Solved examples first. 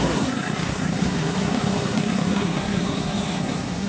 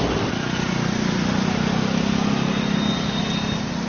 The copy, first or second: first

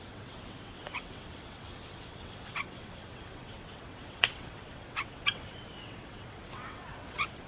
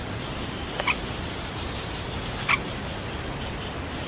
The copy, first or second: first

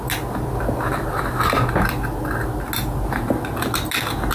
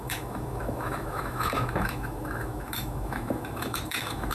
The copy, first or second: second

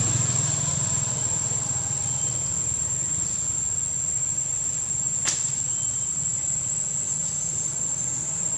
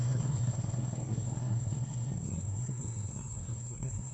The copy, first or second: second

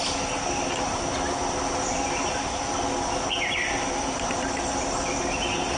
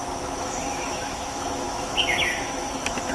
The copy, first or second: second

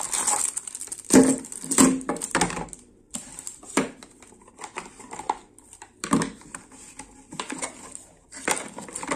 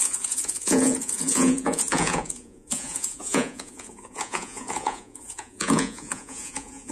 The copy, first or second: second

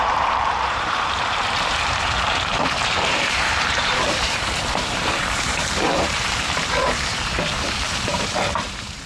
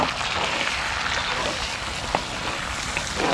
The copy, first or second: first